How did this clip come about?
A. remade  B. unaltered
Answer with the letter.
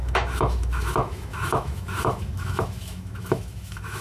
A